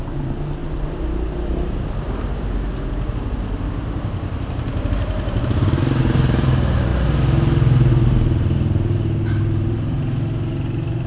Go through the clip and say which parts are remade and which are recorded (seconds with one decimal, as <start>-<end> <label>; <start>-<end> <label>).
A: 0.0-6.9 remade; 6.9-7.9 recorded; 7.9-11.1 remade